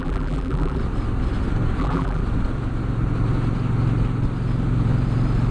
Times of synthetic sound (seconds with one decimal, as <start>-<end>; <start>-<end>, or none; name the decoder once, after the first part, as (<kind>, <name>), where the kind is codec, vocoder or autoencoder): 0.0-0.8 (vocoder, BigVGAN v2); 1.8-2.2